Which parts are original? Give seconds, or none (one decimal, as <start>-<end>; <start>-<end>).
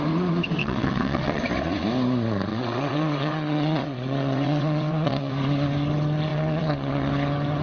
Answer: 0.0-0.6; 1.4-2.5; 5.3-6.3; 7.1-7.6